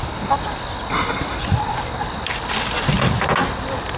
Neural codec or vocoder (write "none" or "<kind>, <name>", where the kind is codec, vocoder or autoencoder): none